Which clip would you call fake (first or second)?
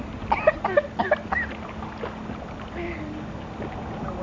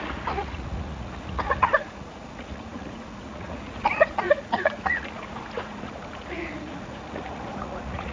second